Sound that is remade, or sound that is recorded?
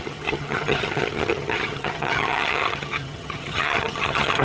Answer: remade